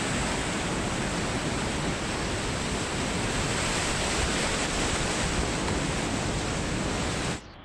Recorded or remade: recorded